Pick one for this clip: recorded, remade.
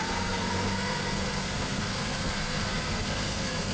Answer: remade